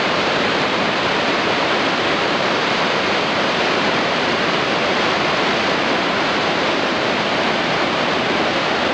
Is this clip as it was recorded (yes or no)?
no